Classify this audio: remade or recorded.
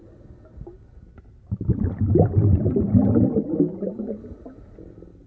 recorded